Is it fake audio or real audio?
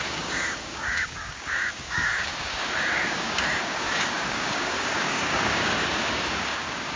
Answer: fake